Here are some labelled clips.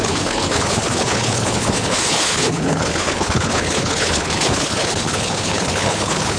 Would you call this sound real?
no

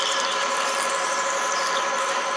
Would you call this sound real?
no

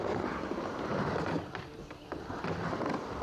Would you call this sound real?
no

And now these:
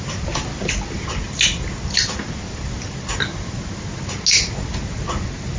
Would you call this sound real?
yes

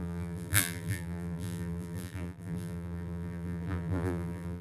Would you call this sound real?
no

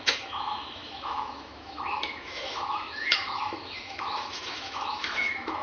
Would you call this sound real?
no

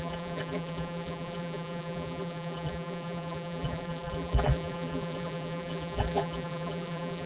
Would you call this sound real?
no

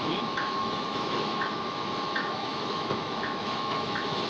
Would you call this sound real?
no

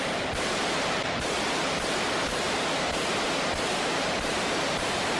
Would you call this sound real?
no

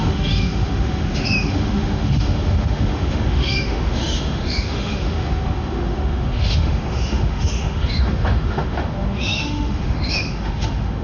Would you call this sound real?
no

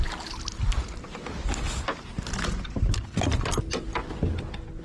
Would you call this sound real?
yes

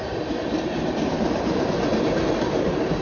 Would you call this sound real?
no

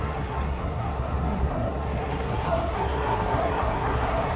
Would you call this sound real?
no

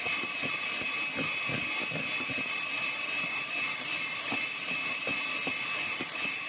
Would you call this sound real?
yes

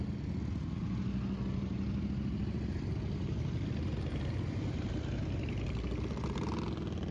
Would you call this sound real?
yes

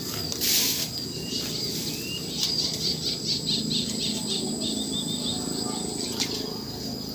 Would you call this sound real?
yes